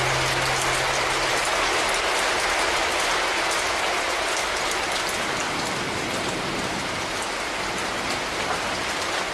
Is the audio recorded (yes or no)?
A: yes